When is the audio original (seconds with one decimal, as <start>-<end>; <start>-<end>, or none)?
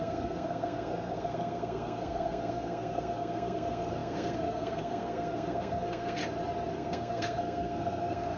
6.2-6.7